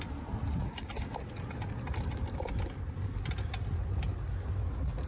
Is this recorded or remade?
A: recorded